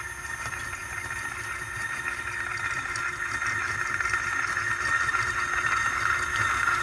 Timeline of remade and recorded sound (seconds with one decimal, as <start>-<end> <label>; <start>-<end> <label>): 0.0-6.8 recorded